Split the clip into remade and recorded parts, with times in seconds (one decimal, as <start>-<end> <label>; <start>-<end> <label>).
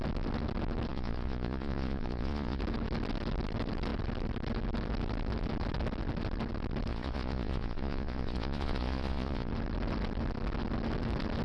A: 0.0-0.9 recorded; 0.9-2.6 remade; 2.6-6.9 recorded; 6.9-9.5 remade; 9.5-11.4 recorded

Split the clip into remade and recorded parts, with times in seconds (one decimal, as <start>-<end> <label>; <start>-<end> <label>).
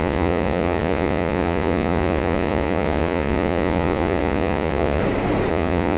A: 0.0-5.0 remade; 5.0-5.5 recorded; 5.5-6.0 remade